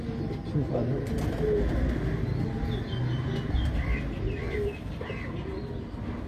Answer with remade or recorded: recorded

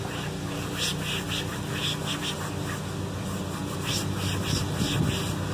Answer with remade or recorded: recorded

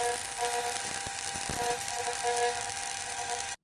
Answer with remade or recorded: recorded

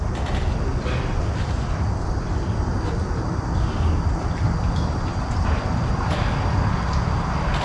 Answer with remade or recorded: recorded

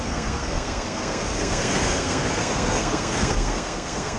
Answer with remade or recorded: remade